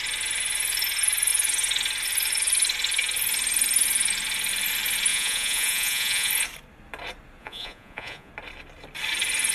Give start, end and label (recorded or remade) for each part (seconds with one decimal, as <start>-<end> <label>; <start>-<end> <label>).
0.0-5.1 recorded; 5.1-6.3 remade; 6.3-7.4 recorded; 7.4-8.3 remade; 8.3-9.5 recorded